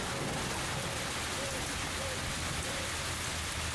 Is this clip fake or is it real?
real